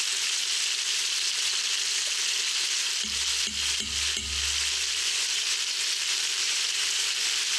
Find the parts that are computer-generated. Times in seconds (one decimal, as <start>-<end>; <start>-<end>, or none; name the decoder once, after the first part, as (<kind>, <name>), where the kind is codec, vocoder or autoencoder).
6.3-7.6 (vocoder, BigVGAN v2)